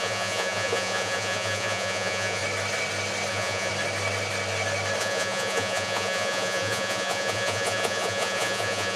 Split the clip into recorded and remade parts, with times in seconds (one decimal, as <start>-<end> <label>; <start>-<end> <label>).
0.0-2.4 remade; 2.4-3.3 recorded; 3.3-3.7 remade; 3.7-5.0 recorded; 5.0-9.0 remade